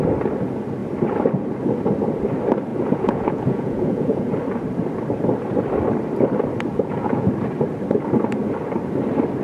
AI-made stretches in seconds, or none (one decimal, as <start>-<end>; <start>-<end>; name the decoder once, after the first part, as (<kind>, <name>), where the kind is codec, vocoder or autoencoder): 2.7-4.3 (vocoder, Vocos); 6.7-7.3

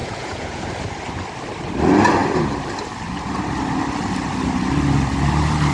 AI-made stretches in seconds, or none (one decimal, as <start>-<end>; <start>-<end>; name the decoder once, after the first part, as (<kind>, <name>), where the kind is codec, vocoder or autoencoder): 0.0-0.6 (vocoder, Vocos)

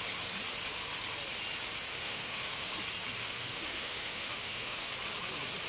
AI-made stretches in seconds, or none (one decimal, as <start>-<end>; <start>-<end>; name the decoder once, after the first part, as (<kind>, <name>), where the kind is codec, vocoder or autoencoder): 1.9-2.7 (autoencoder, DAC-VAE); 3.2-4.9

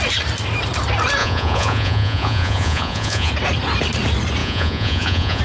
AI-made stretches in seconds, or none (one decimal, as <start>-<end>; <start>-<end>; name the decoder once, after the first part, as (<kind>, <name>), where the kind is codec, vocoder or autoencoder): 1.2-3.3 (vocoder, Vocos); 4.4-5.4

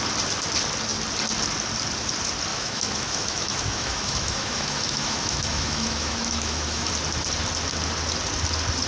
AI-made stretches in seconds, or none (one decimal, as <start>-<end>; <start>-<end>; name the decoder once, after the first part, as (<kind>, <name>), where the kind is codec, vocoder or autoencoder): 2.5-6.9 (autoencoder, DAC-VAE)

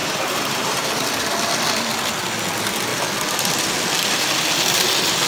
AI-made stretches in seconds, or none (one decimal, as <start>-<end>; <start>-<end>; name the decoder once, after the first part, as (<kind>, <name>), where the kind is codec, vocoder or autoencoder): 0.0-0.9 (vocoder, BigVGAN v2)

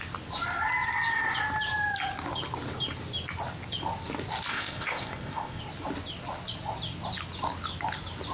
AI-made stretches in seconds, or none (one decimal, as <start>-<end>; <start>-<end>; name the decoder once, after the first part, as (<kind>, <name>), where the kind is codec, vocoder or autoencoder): 4.5-5.6 (codec, ZipCodec)

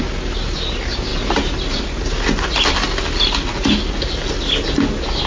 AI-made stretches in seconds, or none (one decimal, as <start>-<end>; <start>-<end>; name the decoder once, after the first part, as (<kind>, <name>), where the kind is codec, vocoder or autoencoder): none